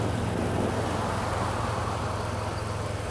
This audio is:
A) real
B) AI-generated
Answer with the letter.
A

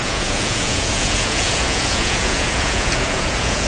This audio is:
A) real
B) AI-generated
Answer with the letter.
B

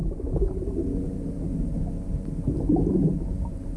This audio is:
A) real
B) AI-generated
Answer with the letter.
A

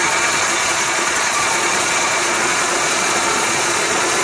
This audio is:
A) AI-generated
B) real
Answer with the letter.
A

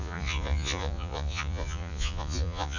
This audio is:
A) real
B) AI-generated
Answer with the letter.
B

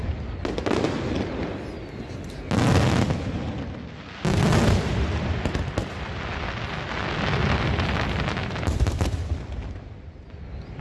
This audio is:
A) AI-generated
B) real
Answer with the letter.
B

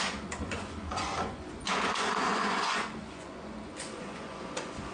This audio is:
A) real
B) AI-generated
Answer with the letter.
B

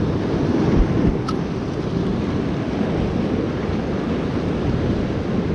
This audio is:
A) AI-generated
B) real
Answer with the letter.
B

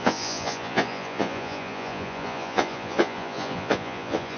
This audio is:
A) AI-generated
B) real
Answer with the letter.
A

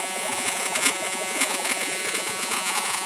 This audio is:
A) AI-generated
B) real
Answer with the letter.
A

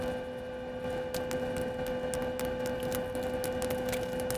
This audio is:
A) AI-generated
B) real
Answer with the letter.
B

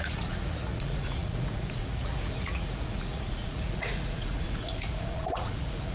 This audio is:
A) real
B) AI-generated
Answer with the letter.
B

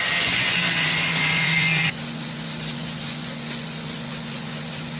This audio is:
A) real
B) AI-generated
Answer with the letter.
B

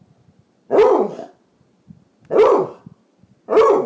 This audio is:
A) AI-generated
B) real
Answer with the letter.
B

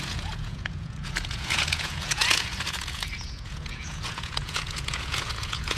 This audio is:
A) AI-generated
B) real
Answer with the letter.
A